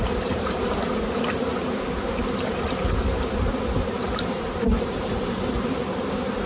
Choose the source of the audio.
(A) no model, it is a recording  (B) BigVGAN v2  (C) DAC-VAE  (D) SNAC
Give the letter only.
B